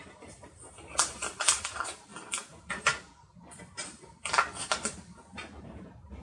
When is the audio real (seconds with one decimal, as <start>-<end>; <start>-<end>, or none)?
2.1-5.6